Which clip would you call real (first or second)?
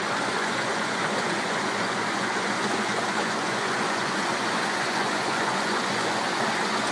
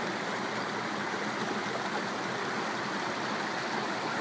second